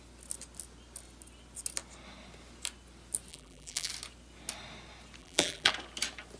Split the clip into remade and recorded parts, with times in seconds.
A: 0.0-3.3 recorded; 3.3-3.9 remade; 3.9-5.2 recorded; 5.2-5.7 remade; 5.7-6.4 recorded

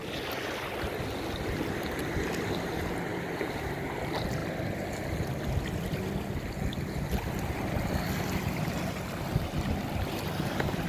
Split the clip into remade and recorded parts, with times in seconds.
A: 0.0-10.9 recorded

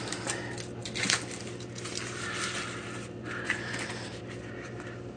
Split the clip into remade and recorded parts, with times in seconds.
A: 0.0-5.2 recorded

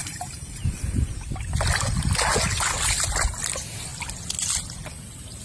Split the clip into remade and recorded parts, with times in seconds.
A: 0.0-1.1 remade; 1.1-5.4 recorded

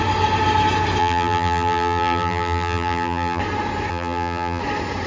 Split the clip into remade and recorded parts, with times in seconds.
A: 0.0-1.0 recorded; 1.0-3.4 remade; 3.4-3.9 recorded; 3.9-4.6 remade; 4.6-5.1 recorded

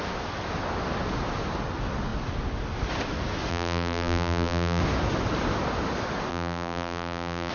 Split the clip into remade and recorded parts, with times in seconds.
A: 0.0-3.5 recorded; 3.5-4.8 remade; 4.8-6.3 recorded; 6.3-7.5 remade

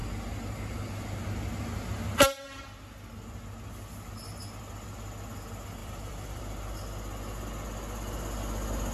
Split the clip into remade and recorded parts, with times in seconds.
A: 0.0-5.8 recorded; 5.8-6.4 remade; 6.4-8.9 recorded